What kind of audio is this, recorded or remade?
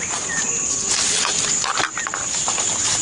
recorded